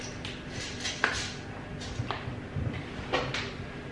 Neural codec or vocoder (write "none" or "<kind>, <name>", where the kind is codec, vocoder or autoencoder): none